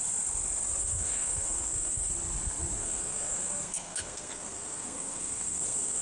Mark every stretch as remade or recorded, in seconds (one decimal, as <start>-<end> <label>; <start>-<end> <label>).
0.0-0.8 recorded; 0.8-2.1 remade; 2.1-2.8 recorded; 2.8-6.0 remade